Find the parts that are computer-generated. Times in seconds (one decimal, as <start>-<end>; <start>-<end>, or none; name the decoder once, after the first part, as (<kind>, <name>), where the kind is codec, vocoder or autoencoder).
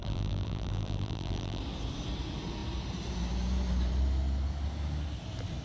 0.0-1.6 (vocoder, BigVGAN v2)